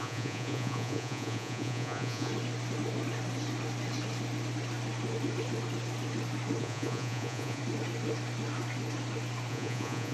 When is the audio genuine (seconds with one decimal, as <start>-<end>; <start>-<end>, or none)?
2.3-6.6; 7.6-9.5